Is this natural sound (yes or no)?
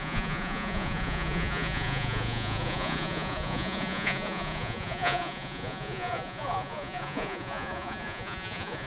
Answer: no